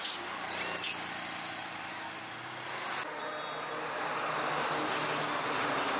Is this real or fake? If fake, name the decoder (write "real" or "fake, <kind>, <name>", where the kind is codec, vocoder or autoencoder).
real